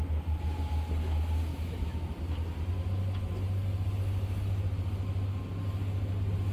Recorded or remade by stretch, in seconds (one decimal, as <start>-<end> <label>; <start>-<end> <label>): 0.0-1.5 recorded; 1.5-2.1 remade; 2.1-6.5 recorded